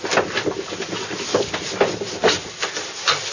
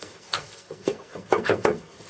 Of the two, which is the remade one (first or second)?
second